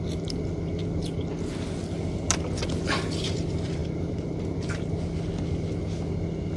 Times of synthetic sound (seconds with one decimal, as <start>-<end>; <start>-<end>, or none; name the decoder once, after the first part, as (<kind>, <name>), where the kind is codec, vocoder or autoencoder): none